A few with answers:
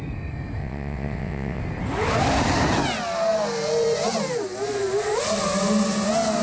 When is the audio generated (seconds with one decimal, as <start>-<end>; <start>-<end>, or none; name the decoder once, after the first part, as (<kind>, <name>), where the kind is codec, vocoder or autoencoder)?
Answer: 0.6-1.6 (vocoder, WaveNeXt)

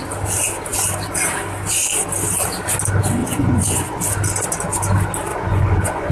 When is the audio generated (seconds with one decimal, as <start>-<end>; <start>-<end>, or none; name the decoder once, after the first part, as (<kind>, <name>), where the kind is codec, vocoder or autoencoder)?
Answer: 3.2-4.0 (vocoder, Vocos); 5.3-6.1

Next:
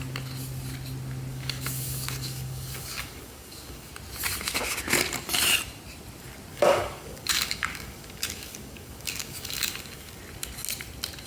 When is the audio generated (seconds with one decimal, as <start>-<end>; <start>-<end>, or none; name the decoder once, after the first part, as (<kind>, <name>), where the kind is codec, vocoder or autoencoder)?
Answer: 1.3-3.9 (codec, DAC); 6.5-10.2

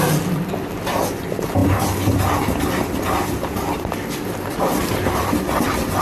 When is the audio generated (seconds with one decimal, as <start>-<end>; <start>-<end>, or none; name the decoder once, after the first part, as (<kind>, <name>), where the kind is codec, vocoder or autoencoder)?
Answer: none

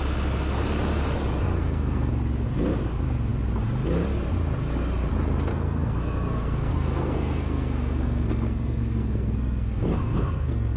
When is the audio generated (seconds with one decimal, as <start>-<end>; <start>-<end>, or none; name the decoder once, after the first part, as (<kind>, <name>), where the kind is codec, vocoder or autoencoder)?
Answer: 1.5-2.1 (codec, SNAC); 5.5-10.8

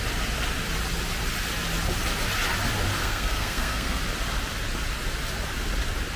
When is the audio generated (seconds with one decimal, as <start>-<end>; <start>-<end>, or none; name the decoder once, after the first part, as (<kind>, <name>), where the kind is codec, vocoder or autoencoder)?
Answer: 3.0-4.0 (codec, SNAC)